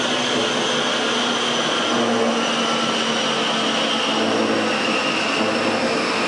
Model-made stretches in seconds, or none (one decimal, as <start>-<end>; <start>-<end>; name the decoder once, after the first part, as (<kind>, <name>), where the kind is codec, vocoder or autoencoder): none

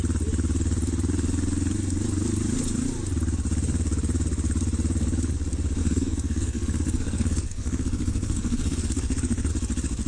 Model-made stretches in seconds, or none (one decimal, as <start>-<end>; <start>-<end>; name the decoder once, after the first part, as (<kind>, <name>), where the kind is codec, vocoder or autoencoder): 5.8-9.5 (codec, SNAC)

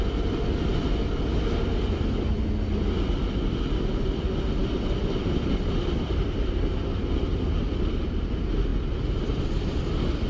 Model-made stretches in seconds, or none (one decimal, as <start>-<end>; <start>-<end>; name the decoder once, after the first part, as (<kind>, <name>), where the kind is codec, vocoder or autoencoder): 3.2-7.6 (vocoder, BigVGAN v2)

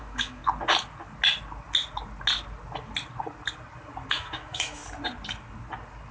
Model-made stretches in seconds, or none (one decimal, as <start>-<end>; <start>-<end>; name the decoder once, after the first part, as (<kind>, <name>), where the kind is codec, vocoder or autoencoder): 0.0-0.4 (autoencoder, DAC-VAE); 4.1-4.8

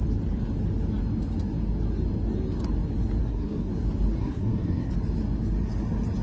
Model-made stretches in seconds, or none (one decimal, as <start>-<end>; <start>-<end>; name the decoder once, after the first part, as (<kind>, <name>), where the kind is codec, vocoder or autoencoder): 3.2-3.7 (codec, SNAC); 4.2-4.9

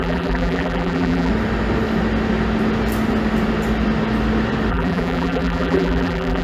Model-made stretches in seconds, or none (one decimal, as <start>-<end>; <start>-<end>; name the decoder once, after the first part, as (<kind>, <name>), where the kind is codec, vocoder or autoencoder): 0.0-1.3 (vocoder, BigVGAN v2); 4.7-6.4

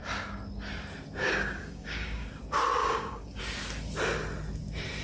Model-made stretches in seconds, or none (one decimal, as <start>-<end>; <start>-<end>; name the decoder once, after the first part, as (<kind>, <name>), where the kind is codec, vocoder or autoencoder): 1.2-2.3 (codec, DAC); 2.8-3.4

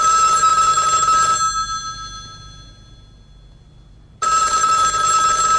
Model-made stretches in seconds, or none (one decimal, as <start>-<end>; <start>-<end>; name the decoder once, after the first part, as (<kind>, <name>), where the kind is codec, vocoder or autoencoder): none